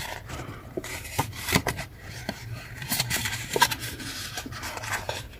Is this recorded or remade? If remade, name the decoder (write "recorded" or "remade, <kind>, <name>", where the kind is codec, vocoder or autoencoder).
remade, vocoder, BigVGAN v2